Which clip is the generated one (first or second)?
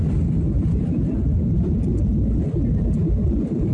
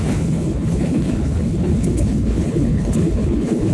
second